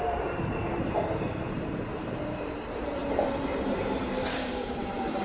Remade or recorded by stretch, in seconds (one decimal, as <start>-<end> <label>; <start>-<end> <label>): 0.0-5.2 remade